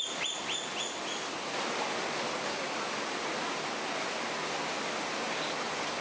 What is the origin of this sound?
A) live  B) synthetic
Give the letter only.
A